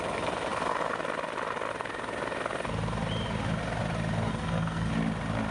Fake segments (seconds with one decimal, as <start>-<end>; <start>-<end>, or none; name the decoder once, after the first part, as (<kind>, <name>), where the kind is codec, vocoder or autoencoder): 4.3-4.9 (codec, SNAC)